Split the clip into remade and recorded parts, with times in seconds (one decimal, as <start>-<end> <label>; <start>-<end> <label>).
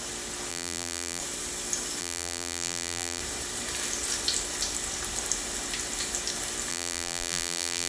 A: 0.0-0.5 recorded; 0.5-1.2 remade; 1.2-2.0 recorded; 2.0-3.2 remade; 3.2-6.7 recorded; 6.7-7.9 remade